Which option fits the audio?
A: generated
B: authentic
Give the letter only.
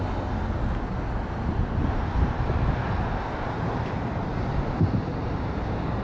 B